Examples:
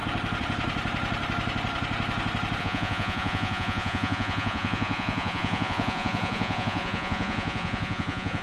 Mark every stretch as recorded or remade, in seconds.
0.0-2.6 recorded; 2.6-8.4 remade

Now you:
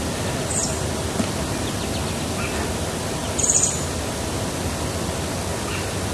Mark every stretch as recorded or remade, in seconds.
0.0-6.1 recorded

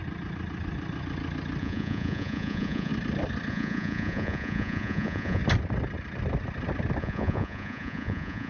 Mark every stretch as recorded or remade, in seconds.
0.0-1.6 recorded; 1.6-2.9 remade; 2.9-3.5 recorded; 3.5-5.4 remade; 5.4-7.0 recorded; 7.0-8.5 remade